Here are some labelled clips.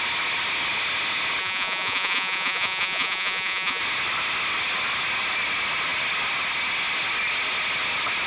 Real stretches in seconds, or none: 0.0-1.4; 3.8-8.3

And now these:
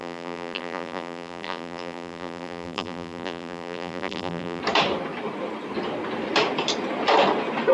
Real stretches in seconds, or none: 4.6-7.7

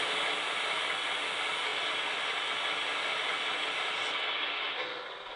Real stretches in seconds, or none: 0.0-5.4

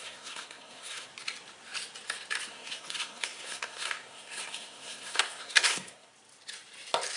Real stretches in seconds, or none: 1.1-2.5; 6.1-7.2

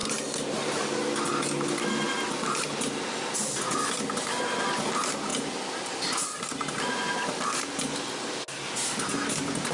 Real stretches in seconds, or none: 0.0-9.7

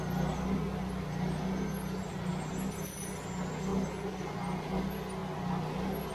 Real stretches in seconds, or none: 0.0-6.1

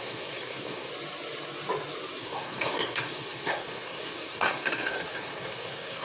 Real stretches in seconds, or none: 0.9-2.2